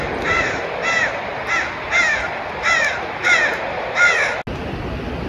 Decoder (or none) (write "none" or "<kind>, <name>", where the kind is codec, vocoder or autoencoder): none